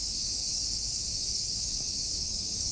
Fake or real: fake